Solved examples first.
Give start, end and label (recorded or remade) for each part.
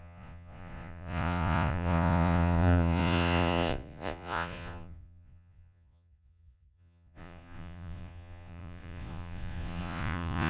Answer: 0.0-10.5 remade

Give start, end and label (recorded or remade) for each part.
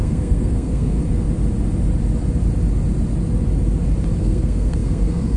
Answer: 0.0-1.0 remade; 1.0-4.2 recorded; 4.2-5.4 remade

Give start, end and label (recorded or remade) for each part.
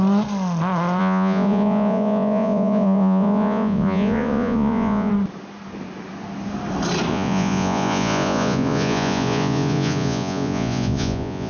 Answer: 0.0-1.0 recorded; 1.0-5.1 remade; 5.1-7.1 recorded; 7.1-11.5 remade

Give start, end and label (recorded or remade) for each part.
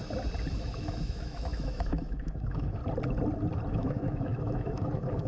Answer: 0.0-0.5 recorded; 0.5-2.8 remade; 2.8-3.7 recorded; 3.7-5.3 remade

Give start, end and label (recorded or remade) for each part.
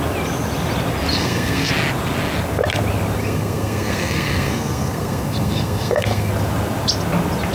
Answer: 0.0-1.1 recorded; 1.1-1.7 remade; 1.7-3.2 recorded; 3.2-6.3 remade; 6.3-7.5 recorded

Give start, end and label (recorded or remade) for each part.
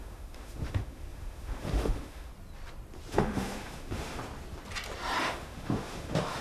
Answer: 0.0-2.3 remade; 2.3-3.1 recorded; 3.1-4.2 remade; 4.2-5.2 recorded; 5.2-6.4 remade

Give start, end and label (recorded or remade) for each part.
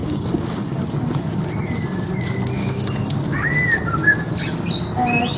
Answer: 0.0-0.8 remade; 0.8-2.6 recorded; 2.6-3.1 remade; 3.1-5.4 recorded